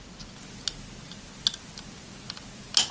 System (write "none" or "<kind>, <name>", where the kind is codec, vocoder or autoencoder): none